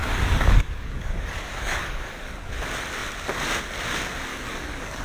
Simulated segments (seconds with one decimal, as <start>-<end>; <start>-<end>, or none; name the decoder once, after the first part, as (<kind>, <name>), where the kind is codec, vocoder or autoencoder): 0.0-2.6 (codec, DAC); 4.3-5.0